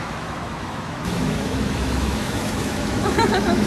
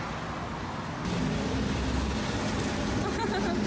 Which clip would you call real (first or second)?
second